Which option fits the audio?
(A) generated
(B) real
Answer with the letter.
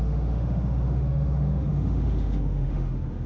A